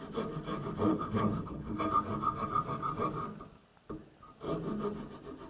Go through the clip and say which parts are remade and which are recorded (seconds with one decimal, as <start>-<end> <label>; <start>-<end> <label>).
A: 0.0-0.9 recorded; 0.9-1.8 remade; 1.8-5.5 recorded